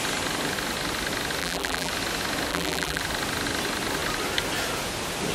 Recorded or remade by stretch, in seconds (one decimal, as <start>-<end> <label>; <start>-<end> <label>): 0.0-1.4 recorded; 1.4-1.9 remade; 1.9-2.5 recorded; 2.5-3.0 remade; 3.0-5.3 recorded